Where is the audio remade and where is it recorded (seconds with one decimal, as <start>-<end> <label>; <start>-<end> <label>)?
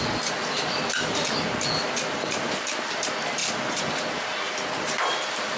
0.0-5.6 recorded